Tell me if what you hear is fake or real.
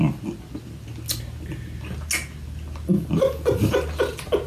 real